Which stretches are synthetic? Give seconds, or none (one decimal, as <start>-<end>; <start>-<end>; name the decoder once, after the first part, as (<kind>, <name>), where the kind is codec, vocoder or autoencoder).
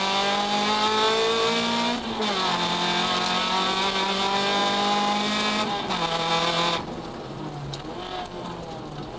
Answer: none